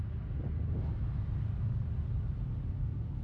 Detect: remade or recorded recorded